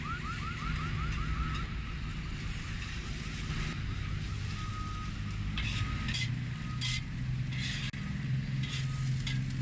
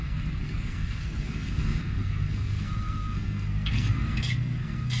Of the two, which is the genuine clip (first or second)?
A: first